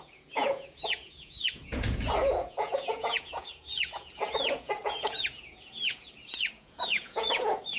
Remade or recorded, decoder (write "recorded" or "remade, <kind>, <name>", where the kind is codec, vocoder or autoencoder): remade, vocoder, Vocos